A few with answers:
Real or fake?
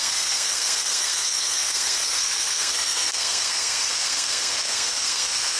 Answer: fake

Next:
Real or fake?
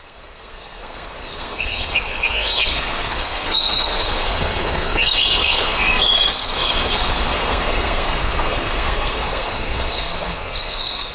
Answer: fake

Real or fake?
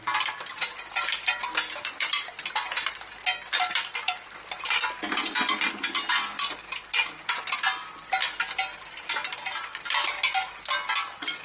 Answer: real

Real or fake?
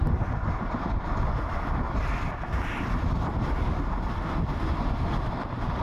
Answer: real